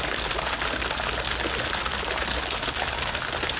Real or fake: real